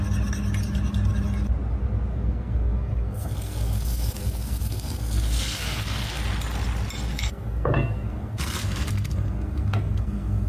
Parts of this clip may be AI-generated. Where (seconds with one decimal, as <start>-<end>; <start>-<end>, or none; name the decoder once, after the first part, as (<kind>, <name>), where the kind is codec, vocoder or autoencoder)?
2.1-6.2 (codec, SNAC); 7.1-10.5